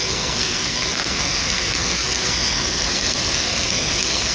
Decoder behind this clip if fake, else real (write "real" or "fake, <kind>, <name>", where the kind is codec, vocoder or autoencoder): fake, codec, SNAC